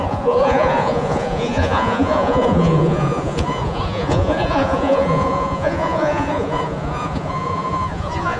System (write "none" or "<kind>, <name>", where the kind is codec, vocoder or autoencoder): vocoder, Vocos